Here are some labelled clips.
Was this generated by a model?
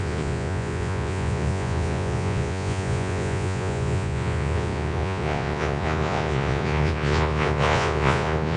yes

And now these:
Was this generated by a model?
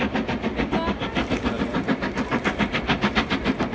no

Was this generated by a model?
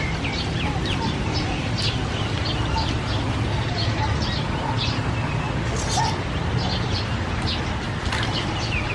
no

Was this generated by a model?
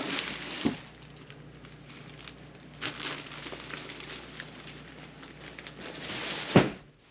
no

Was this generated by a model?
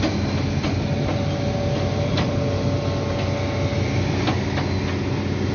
no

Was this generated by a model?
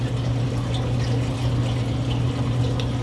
no